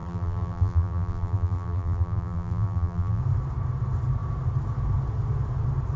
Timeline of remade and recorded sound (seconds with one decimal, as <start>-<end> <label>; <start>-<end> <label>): 0.0-3.2 remade; 3.2-6.0 recorded